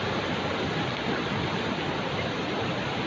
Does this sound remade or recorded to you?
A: recorded